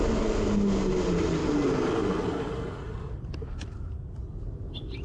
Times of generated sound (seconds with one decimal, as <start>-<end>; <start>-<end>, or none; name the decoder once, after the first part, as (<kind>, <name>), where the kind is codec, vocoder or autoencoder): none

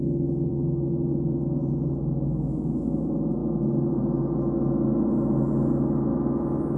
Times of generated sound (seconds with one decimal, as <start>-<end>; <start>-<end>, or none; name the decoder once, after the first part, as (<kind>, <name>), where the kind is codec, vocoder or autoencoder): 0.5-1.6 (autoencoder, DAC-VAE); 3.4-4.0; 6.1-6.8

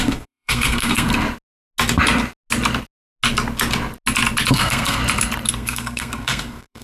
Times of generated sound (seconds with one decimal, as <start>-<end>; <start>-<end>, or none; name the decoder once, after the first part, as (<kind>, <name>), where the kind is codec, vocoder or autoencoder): 0.0-1.1 (codec, SNAC); 4.5-5.0; 5.5-6.8